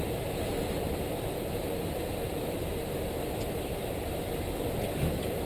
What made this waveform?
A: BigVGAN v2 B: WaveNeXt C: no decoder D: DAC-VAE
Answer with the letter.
C